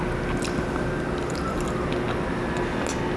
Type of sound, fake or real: real